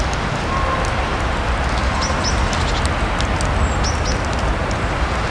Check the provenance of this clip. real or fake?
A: real